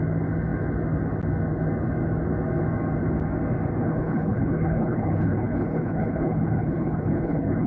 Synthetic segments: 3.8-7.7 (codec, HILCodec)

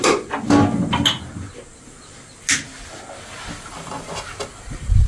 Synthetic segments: none

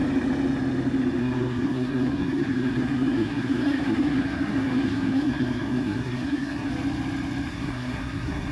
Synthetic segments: 1.2-6.7 (codec, SNAC); 7.5-8.5